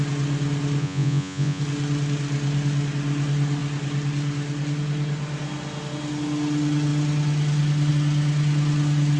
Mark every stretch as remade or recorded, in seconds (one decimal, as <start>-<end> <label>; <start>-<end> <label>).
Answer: 0.0-0.8 recorded; 0.8-1.6 remade; 1.6-9.2 recorded